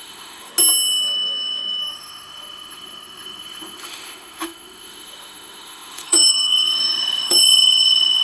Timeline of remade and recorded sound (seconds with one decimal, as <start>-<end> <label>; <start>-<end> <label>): 0.0-0.5 remade; 0.5-1.8 recorded; 1.8-8.2 remade